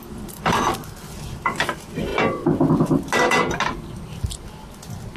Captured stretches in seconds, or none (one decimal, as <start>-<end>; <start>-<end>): 1.6-5.2